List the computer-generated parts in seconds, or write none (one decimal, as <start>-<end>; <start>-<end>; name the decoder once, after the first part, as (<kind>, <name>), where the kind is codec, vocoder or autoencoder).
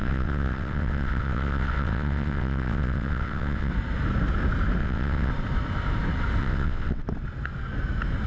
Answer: 0.0-3.7 (vocoder, WaveNeXt); 4.8-5.3; 6.4-7.0